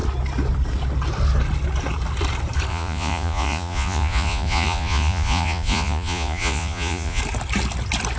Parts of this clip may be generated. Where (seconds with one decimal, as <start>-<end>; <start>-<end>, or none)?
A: 2.7-7.2